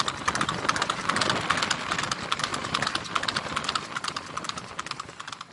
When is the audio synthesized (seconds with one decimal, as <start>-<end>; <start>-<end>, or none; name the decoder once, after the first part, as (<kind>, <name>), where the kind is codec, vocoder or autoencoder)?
2.5-3.7 (vocoder, BigVGAN v2)